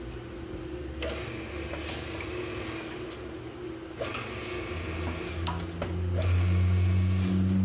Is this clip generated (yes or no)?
no